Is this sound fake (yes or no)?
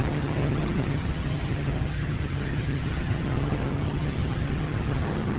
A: yes